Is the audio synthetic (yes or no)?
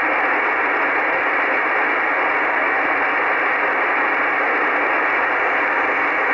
no